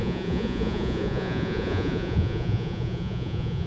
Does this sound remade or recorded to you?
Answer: remade